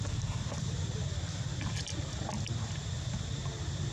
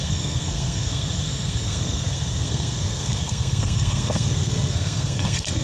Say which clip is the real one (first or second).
first